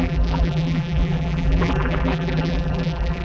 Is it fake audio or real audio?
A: fake